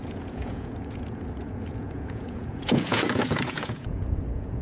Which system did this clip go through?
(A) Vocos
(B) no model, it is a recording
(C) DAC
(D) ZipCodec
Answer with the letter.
A